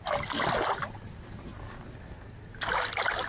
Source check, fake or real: real